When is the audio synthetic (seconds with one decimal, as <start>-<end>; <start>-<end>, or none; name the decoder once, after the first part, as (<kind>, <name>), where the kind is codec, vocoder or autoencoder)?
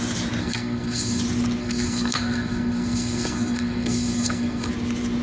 0.4-1.2 (codec, SNAC); 1.6-4.7